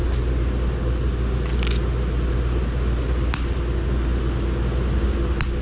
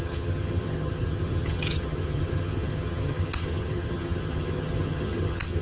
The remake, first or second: second